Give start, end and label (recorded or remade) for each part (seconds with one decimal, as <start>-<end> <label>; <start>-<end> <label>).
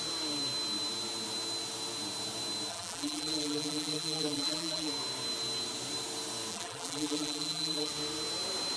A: 0.0-2.7 recorded; 2.7-4.9 remade; 4.9-6.5 recorded; 6.5-7.9 remade; 7.9-8.8 recorded